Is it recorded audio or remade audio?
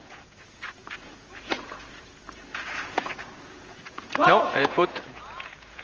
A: remade